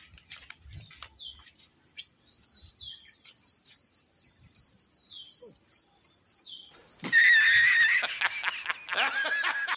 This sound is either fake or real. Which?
real